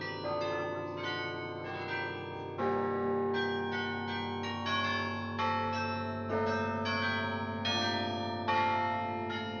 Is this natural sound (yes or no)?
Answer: yes